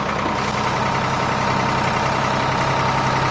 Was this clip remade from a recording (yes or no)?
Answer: no